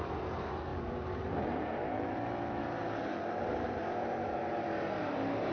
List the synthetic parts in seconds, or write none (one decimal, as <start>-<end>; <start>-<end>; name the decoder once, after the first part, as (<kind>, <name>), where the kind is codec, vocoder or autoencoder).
0.0-5.5 (vocoder, BigVGAN v2)